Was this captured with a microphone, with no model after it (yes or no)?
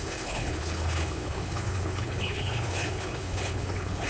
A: no